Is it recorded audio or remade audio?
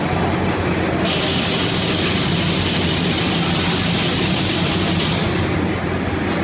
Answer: recorded